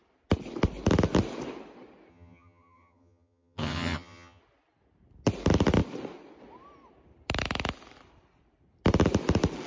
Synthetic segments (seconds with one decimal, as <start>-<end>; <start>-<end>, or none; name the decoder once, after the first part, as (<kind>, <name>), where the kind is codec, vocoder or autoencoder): 2.1-4.4 (vocoder, HiFi-GAN)